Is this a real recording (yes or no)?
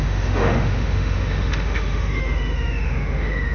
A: no